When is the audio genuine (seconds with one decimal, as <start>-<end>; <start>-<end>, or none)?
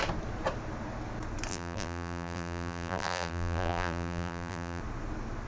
0.0-1.5; 4.8-5.5